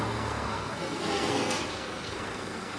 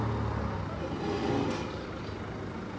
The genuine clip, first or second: second